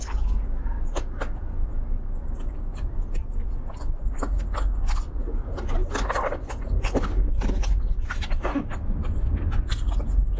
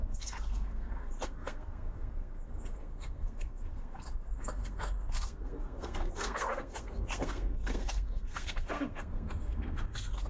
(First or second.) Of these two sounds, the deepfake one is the second